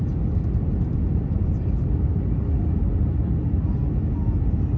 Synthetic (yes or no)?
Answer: no